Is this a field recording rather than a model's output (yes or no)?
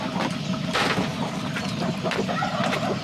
yes